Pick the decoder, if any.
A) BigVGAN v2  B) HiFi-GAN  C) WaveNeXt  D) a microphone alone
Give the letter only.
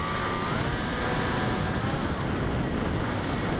D